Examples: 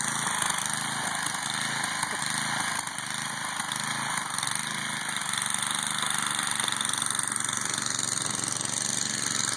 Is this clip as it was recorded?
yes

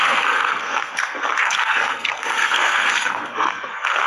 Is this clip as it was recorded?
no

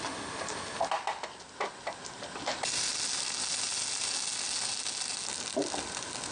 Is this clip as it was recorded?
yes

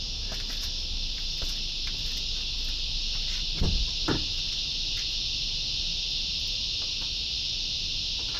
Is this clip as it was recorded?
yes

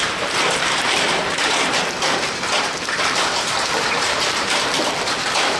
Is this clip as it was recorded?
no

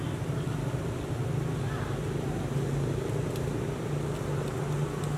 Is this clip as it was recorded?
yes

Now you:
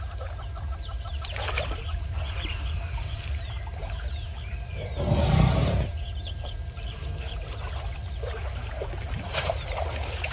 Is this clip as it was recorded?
no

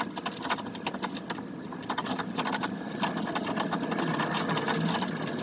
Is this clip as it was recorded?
yes